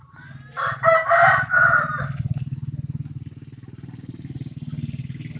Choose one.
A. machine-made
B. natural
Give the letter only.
B